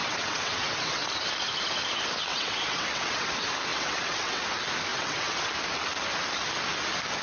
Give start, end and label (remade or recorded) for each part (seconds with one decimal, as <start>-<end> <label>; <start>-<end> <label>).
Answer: 0.0-1.1 remade; 1.1-2.3 recorded; 2.3-3.3 remade; 3.3-3.7 recorded; 3.7-4.5 remade; 4.5-4.9 recorded; 4.9-5.5 remade; 5.5-7.2 recorded